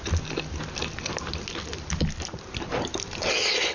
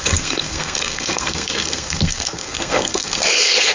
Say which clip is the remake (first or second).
second